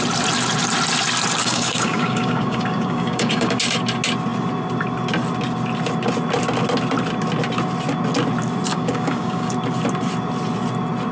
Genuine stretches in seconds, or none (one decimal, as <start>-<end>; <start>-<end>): 0.0-1.4; 3.6-8.7; 9.5-11.1